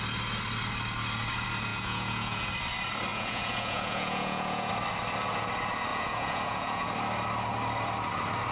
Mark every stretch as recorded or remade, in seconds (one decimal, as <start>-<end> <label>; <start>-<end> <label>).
0.0-1.7 recorded; 1.7-2.5 remade; 2.5-3.1 recorded; 3.1-4.7 remade; 4.7-5.9 recorded; 5.9-6.9 remade; 6.9-8.5 recorded